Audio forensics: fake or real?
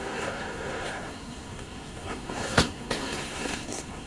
fake